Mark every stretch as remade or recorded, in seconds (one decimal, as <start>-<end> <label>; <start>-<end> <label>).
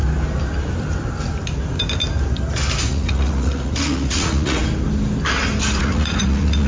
0.0-2.9 recorded; 2.9-4.6 remade; 4.6-5.8 recorded; 5.8-6.7 remade